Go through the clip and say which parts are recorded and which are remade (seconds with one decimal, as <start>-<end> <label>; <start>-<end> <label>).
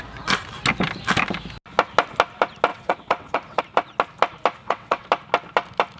0.0-2.7 recorded; 2.7-3.6 remade; 3.6-4.6 recorded; 4.6-5.1 remade; 5.1-6.0 recorded